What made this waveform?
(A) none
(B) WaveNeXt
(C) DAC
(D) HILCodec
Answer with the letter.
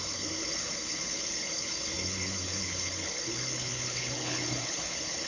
D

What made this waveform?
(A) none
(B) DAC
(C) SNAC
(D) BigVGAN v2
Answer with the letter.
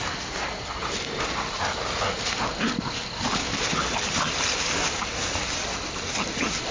A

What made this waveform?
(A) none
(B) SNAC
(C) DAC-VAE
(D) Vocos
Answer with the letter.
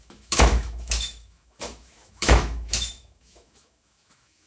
C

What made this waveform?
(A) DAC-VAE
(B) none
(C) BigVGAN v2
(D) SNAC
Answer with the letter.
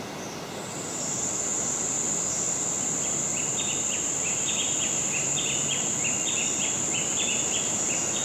B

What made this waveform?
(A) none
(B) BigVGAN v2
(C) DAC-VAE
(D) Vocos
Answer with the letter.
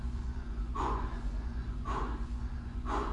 D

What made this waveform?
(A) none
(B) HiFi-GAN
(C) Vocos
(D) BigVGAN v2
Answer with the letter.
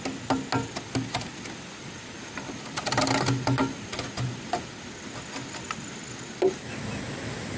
A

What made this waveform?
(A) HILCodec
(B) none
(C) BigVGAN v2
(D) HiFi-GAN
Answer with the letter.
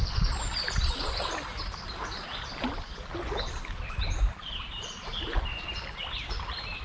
B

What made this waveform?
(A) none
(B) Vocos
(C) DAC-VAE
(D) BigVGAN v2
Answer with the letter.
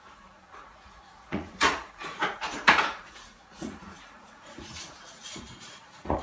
B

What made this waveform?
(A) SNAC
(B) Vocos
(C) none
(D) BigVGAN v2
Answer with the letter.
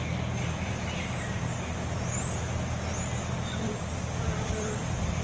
C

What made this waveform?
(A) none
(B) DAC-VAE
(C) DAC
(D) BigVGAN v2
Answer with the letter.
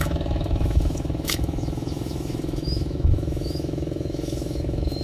B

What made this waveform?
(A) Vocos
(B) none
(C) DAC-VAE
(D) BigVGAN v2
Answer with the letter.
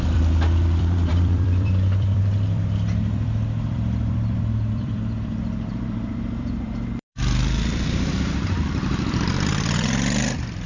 D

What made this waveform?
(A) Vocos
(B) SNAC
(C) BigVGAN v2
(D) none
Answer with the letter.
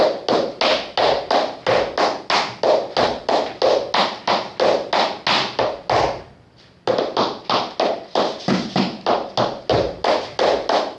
D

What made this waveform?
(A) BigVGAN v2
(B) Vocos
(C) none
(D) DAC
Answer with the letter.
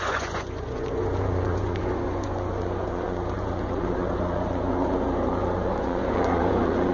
B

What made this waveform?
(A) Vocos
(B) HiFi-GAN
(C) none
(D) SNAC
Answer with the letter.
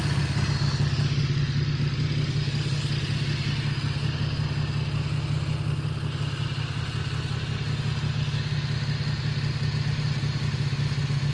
C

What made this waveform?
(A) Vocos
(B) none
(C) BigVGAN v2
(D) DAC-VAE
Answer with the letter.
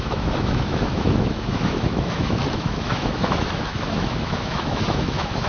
D